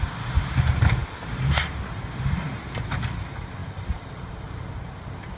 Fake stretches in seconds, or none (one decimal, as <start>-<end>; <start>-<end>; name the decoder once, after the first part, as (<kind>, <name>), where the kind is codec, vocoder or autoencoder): none